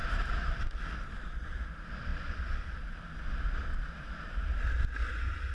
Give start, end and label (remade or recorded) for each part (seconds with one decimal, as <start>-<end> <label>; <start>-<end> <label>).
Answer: 0.0-0.6 remade; 0.6-5.5 recorded

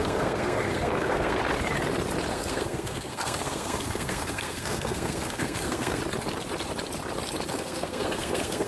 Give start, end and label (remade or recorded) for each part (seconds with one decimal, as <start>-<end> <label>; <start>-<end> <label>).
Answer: 0.0-1.4 remade; 1.4-2.3 recorded; 2.3-6.0 remade; 6.0-7.5 recorded; 7.5-8.7 remade

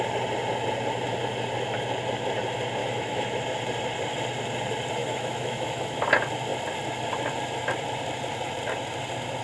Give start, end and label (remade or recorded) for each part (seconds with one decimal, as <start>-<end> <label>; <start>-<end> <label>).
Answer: 0.0-2.8 recorded; 2.8-3.4 remade; 3.4-5.0 recorded; 5.0-6.0 remade; 6.0-9.4 recorded

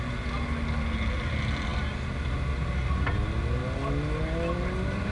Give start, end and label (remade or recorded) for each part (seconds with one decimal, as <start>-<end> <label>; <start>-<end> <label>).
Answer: 0.0-5.1 recorded